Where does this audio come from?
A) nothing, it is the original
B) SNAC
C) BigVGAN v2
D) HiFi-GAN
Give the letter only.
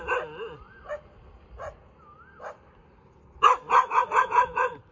A